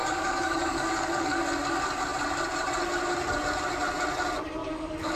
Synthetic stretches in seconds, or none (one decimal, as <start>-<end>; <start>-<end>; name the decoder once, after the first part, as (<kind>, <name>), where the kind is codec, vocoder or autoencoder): 0.0-1.4 (codec, DAC); 4.6-5.2